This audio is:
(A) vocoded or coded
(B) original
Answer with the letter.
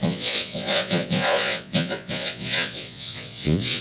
A